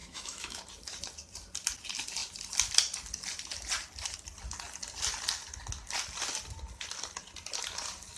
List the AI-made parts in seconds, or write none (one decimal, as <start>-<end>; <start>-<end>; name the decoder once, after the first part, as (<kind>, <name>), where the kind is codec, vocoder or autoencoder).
0.0-0.6 (autoencoder, DAC-VAE)